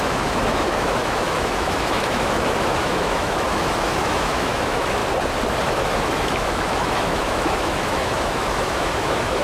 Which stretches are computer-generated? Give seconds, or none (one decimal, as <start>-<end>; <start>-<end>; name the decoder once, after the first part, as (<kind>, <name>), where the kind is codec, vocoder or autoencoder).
0.0-5.0 (autoencoder, DAC-VAE); 5.6-9.4